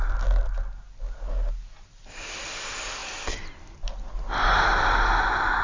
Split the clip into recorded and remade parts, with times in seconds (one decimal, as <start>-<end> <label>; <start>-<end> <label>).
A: 0.0-5.6 recorded